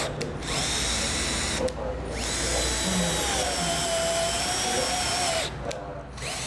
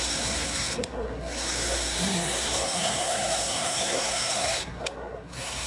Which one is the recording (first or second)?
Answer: first